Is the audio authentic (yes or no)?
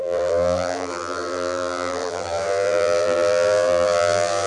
no